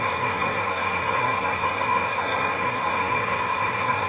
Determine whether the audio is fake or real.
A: fake